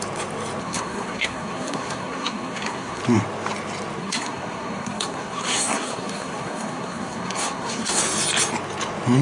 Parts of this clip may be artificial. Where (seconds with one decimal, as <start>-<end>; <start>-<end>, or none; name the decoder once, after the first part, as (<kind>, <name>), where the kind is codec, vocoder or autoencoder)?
0.6-3.0 (codec, SNAC); 4.0-8.0